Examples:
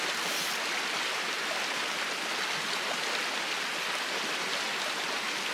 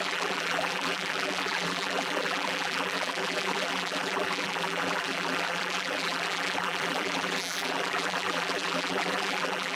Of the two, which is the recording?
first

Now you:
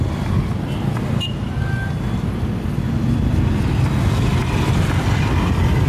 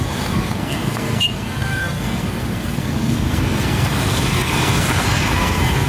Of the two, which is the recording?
first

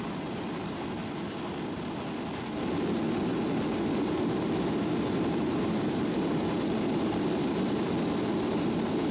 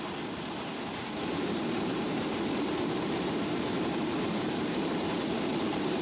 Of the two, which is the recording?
first